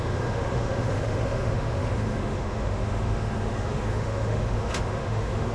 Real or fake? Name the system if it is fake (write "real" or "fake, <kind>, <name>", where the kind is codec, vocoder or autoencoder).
fake, autoencoder, DAC-VAE